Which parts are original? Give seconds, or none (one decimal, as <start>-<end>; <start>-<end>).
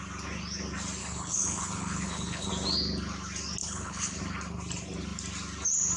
0.0-1.0; 2.5-3.6; 4.2-6.0